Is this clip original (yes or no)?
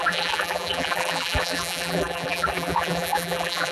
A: no